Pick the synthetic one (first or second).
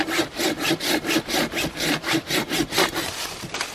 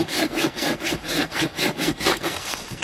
second